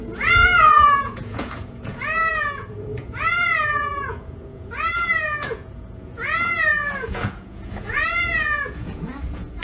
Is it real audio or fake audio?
fake